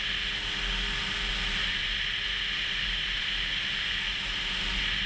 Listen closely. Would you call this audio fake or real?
real